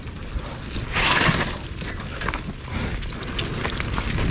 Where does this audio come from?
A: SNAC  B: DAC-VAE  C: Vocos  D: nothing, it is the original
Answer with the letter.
D